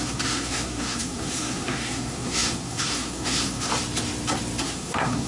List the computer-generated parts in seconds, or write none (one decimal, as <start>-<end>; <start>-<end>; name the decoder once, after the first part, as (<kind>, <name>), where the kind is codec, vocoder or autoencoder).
0.0-3.7 (codec, SNAC); 4.6-5.3